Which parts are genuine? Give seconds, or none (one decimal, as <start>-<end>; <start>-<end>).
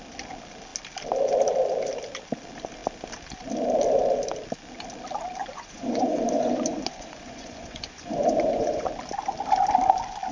0.0-5.4; 8.9-10.3